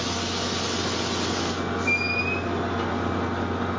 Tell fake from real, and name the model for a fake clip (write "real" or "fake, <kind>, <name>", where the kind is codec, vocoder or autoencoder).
real